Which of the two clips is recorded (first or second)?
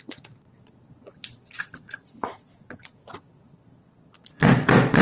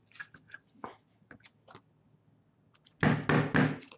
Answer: second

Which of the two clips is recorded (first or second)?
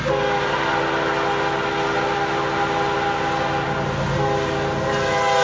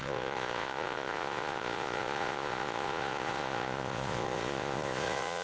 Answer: first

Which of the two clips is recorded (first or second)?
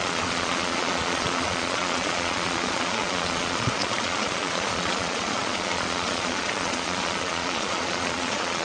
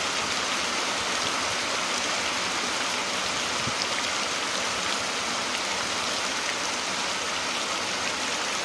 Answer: second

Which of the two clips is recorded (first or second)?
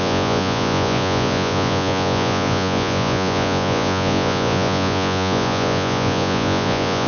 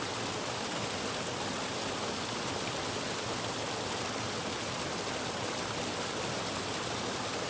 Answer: second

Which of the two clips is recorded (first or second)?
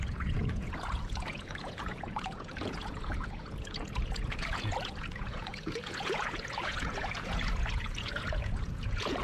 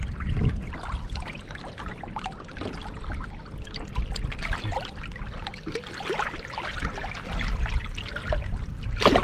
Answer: second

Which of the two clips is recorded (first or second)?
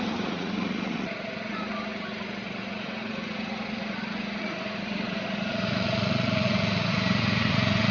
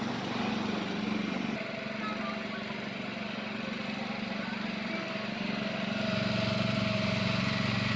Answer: second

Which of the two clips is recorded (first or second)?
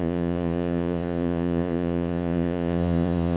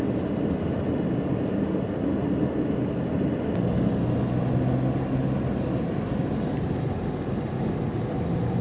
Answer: second